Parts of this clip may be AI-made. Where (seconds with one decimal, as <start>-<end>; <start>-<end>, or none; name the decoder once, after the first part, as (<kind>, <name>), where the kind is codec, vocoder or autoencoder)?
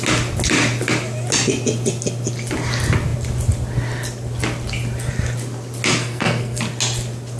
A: 6.0-6.6 (codec, SNAC)